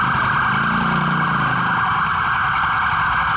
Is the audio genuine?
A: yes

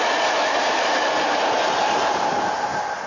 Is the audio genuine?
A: yes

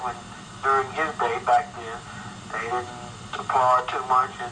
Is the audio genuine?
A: yes